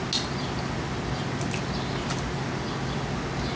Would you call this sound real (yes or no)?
yes